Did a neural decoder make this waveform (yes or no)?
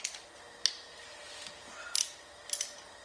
no